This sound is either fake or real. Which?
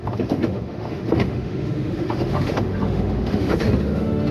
fake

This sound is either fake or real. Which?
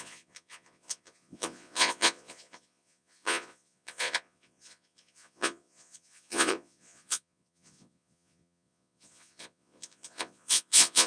fake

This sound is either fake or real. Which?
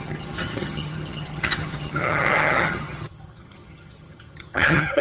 fake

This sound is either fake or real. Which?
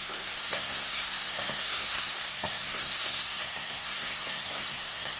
fake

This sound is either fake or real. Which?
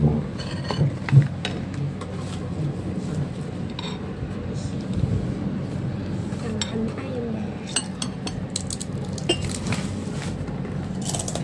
real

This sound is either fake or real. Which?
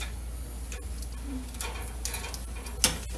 real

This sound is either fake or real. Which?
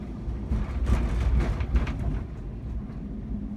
real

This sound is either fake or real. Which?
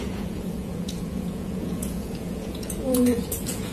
fake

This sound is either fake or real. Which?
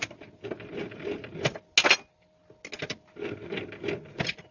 real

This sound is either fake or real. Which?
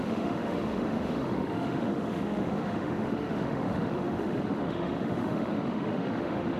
fake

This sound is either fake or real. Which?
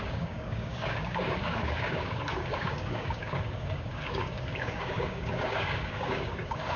fake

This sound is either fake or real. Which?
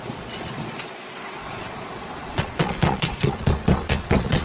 fake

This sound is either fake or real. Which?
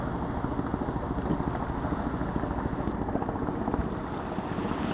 real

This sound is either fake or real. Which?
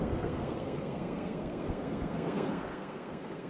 fake